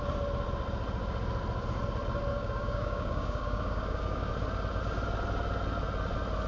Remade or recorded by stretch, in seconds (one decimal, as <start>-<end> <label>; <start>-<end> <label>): 0.0-2.3 recorded; 2.3-4.3 remade; 4.3-6.5 recorded